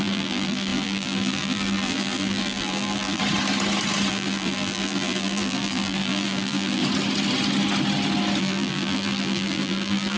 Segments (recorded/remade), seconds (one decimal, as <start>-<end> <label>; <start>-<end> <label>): 0.0-3.2 remade; 3.2-4.1 recorded; 4.1-6.8 remade; 6.8-8.4 recorded; 8.4-10.2 remade